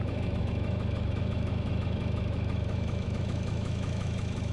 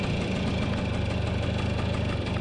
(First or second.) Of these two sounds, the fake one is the first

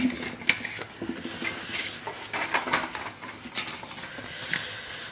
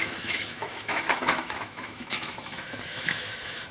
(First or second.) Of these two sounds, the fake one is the second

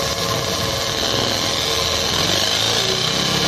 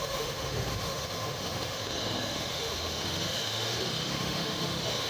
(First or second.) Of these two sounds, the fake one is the second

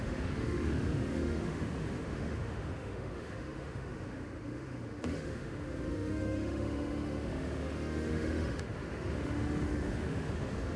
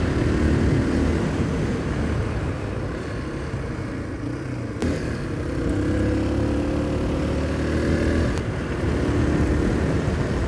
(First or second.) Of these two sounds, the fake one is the first